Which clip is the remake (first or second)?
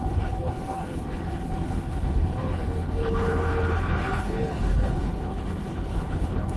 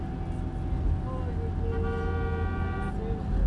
first